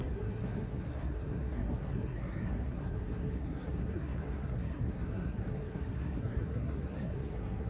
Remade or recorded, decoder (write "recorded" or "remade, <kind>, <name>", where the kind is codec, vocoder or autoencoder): remade, codec, SNAC